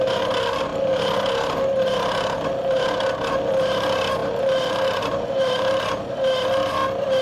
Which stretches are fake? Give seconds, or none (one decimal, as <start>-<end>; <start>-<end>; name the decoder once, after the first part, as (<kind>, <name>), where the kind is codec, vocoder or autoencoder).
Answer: 4.2-5.8 (vocoder, BigVGAN v2)